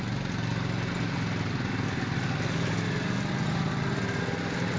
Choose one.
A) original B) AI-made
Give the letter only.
A